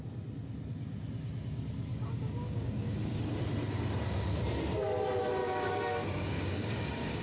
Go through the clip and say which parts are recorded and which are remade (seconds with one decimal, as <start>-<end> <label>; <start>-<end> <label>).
0.0-1.9 recorded; 1.9-3.2 remade; 3.2-5.4 recorded; 5.4-7.2 remade